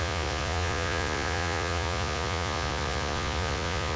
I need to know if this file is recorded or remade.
remade